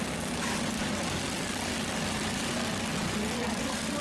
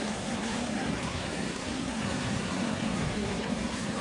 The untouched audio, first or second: first